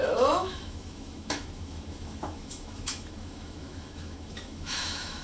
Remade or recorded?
remade